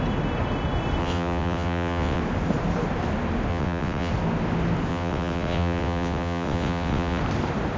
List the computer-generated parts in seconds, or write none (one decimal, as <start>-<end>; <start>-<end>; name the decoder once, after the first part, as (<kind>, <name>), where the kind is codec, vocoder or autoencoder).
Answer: 1.0-2.2 (vocoder, WaveNeXt); 3.5-4.1; 4.9-7.2